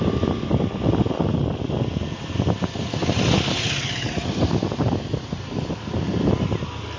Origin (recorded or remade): recorded